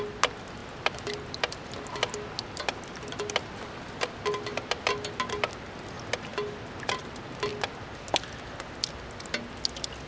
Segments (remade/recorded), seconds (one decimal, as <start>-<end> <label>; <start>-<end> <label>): 0.0-10.1 recorded